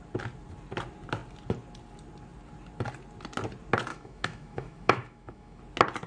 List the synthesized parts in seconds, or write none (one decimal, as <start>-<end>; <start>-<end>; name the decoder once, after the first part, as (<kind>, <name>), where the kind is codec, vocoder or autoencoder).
3.9-5.6 (autoencoder, DAC-VAE)